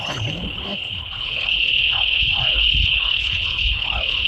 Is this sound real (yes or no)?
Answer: no